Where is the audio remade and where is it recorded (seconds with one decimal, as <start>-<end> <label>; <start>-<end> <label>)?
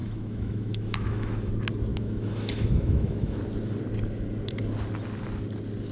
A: 0.0-1.5 remade; 1.5-1.9 recorded; 1.9-3.4 remade; 3.4-5.9 recorded